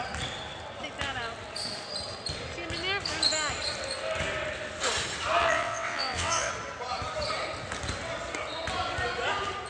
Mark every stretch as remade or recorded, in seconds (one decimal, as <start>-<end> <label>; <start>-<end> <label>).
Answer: 0.0-5.4 recorded; 5.4-6.5 remade; 6.5-9.7 recorded